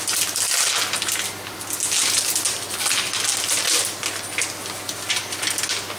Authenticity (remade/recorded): recorded